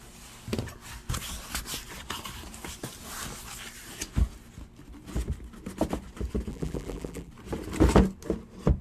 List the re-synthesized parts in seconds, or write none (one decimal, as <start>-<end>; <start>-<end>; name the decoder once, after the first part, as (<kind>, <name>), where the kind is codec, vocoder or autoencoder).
6.5-7.3 (vocoder, BigVGAN v2)